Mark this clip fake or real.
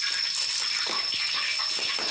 real